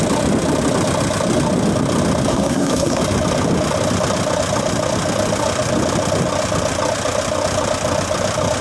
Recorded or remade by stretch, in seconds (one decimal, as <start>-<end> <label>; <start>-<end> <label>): 0.0-2.3 recorded; 2.3-3.0 remade; 3.0-8.6 recorded